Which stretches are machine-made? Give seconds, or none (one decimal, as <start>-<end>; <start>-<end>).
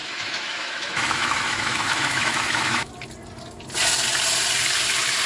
0.0-2.9